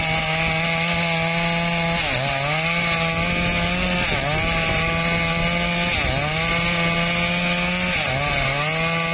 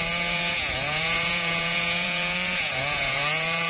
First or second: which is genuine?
first